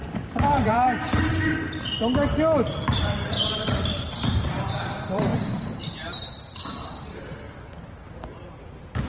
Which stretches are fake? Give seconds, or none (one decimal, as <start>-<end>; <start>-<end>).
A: 0.0-2.0; 2.8-9.1